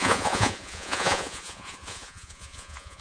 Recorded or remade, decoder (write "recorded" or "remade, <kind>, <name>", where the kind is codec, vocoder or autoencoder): remade, vocoder, Vocos